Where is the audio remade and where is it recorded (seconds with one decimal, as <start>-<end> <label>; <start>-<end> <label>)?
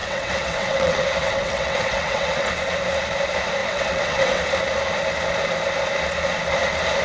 0.0-2.5 remade; 2.5-3.6 recorded; 3.6-4.4 remade; 4.4-7.0 recorded